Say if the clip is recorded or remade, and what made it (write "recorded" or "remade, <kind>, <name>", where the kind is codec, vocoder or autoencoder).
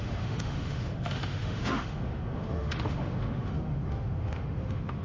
remade, autoencoder, DAC-VAE